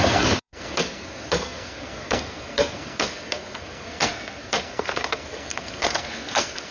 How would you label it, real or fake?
fake